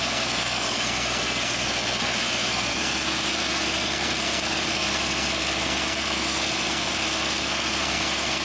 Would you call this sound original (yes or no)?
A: no